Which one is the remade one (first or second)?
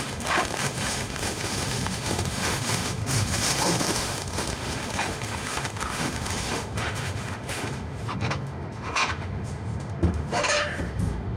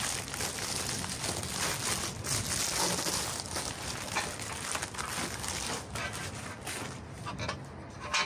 first